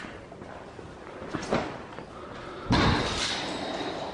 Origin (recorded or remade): recorded